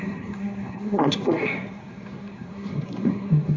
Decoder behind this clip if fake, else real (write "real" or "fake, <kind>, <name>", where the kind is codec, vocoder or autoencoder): fake, codec, SNAC